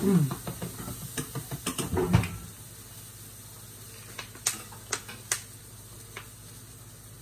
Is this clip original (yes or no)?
yes